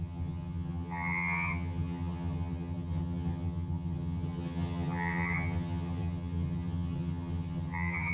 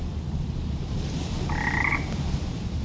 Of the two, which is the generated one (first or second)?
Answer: first